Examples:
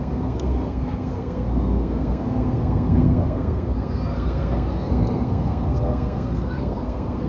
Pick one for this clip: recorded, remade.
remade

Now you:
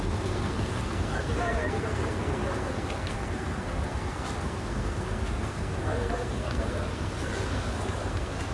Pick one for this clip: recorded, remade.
remade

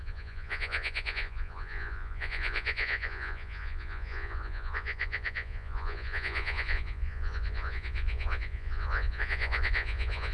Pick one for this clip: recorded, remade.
remade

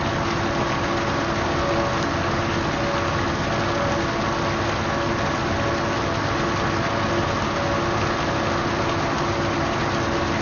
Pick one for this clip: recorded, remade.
recorded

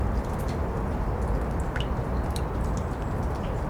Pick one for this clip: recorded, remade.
recorded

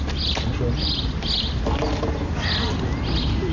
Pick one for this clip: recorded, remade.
recorded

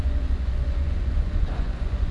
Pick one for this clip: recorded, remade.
remade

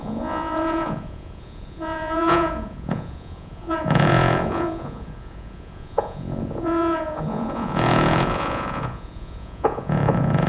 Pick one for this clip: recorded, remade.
remade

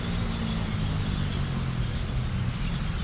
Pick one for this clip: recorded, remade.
recorded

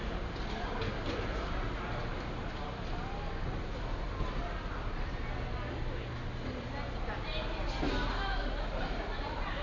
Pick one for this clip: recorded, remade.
recorded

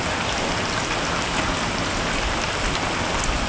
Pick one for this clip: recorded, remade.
recorded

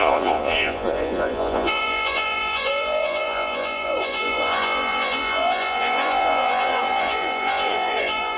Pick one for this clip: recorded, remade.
remade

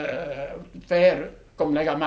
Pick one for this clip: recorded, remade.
recorded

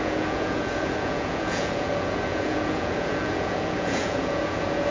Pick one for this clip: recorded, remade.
remade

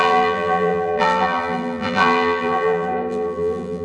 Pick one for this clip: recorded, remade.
remade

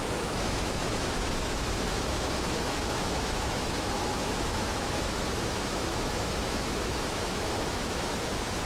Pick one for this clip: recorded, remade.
remade